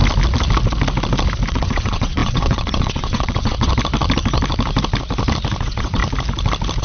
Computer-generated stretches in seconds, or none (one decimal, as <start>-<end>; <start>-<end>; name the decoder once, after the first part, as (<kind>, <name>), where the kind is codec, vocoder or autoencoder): 1.5-3.7 (vocoder, WaveNeXt); 5.6-6.0